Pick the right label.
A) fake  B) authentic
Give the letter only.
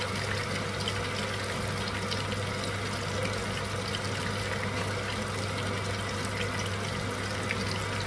B